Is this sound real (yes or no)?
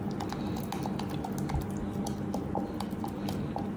yes